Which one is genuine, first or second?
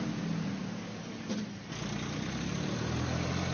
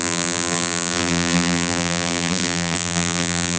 first